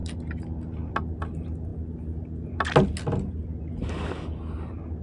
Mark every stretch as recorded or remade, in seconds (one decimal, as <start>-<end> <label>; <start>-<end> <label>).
0.0-5.0 recorded